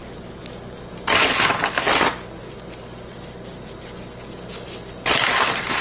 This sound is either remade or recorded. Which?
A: recorded